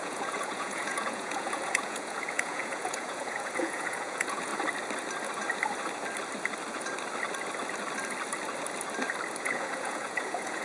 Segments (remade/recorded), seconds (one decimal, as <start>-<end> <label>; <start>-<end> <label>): 0.0-4.5 remade; 4.5-9.4 recorded; 9.4-10.6 remade